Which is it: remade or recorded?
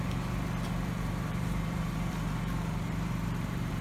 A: remade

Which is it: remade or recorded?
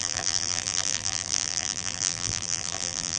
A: remade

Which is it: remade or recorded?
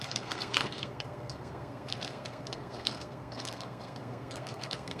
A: remade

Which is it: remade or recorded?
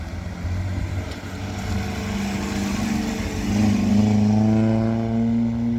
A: recorded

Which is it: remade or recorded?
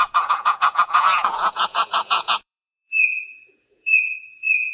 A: remade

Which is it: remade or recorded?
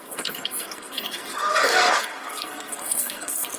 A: remade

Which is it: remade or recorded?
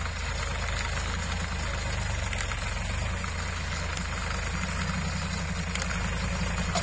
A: recorded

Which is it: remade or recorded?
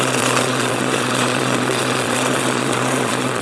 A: remade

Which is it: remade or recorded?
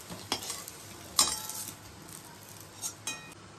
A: recorded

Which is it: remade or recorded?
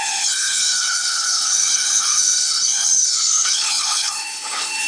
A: remade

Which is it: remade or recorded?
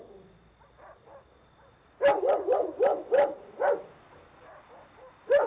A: recorded